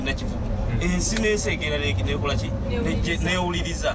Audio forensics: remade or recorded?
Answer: recorded